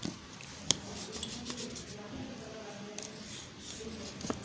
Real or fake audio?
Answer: real